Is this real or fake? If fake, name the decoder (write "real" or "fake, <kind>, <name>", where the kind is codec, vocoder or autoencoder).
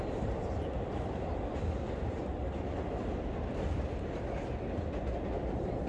real